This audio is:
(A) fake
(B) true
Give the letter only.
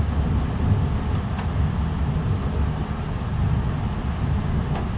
B